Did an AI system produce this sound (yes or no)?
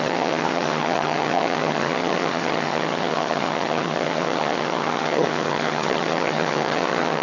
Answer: yes